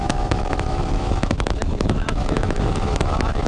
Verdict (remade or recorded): remade